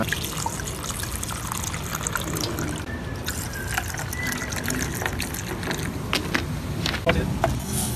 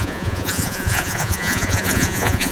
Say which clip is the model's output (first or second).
second